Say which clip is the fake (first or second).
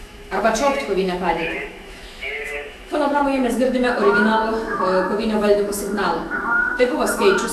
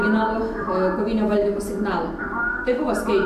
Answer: first